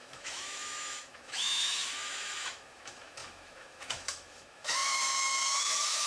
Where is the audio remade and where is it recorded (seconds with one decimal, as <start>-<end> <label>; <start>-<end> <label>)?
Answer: 0.0-6.1 remade